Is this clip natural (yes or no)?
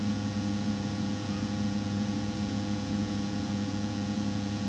no